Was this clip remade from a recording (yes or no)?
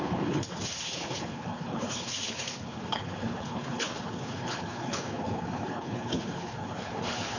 yes